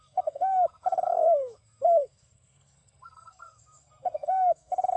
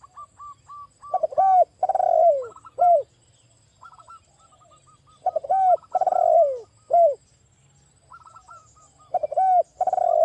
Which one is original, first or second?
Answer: second